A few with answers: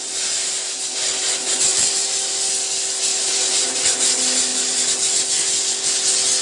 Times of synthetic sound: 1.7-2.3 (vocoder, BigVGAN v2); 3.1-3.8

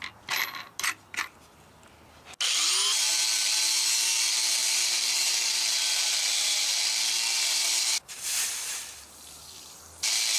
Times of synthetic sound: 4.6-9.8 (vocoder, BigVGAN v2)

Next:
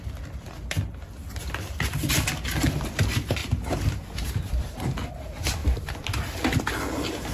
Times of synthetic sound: 3.4-5.1 (vocoder, BigVGAN v2)

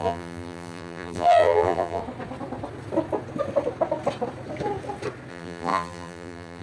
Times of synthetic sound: 0.0-2.0 (vocoder, BigVGAN v2); 5.3-6.6